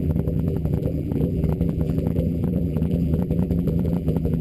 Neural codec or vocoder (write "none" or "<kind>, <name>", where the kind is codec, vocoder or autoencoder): vocoder, BigVGAN v2